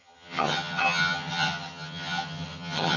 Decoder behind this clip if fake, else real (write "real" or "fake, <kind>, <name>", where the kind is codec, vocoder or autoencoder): fake, vocoder, HiFi-GAN